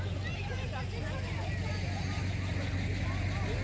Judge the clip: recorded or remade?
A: recorded